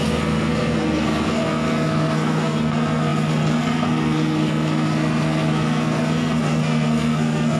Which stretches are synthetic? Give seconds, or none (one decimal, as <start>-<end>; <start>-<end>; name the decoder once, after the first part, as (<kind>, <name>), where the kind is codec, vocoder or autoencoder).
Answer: 0.0-7.6 (codec, SNAC)